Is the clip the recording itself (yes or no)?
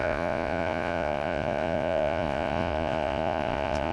no